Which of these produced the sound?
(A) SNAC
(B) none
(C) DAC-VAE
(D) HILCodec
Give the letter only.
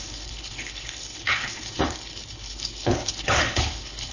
D